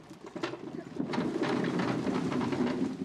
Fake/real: fake